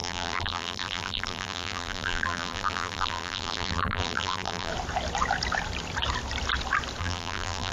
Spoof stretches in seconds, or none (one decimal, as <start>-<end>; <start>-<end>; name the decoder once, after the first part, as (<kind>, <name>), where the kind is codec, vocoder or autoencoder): 0.0-4.7 (vocoder, BigVGAN v2); 7.0-7.7